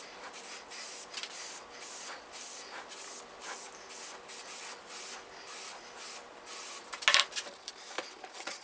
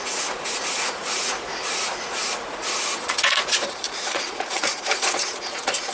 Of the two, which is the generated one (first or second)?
second